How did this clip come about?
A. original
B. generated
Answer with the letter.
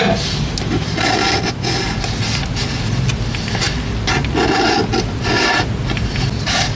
A